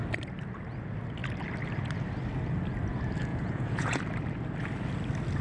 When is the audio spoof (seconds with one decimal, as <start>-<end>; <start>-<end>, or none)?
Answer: 3.3-4.0